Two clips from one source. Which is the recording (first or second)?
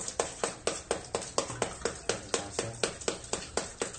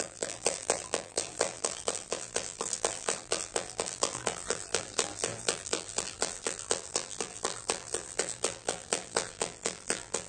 first